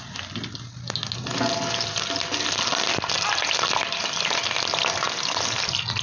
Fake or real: real